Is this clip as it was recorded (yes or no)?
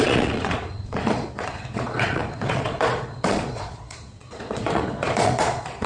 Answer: no